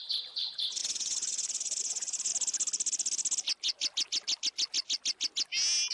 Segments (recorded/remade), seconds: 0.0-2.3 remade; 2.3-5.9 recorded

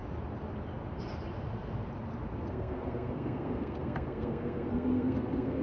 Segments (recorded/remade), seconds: 0.0-2.5 recorded; 2.5-5.6 remade

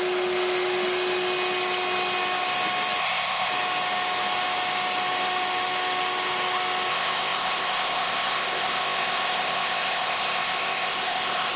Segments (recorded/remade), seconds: 0.0-3.0 recorded; 3.0-3.5 remade; 3.5-6.9 recorded; 6.9-11.6 remade

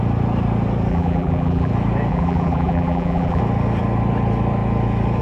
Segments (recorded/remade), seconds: 0.0-0.9 recorded; 0.9-1.7 remade; 1.7-2.1 recorded; 2.1-3.4 remade; 3.4-5.2 recorded

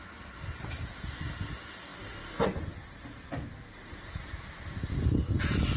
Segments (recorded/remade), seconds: 0.0-5.8 recorded

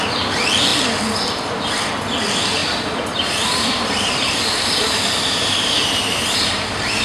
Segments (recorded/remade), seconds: 0.0-2.6 recorded; 2.6-7.0 remade

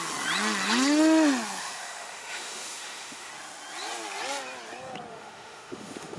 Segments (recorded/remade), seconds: 0.0-1.6 recorded; 1.6-3.3 remade; 3.3-5.1 recorded; 5.1-6.2 remade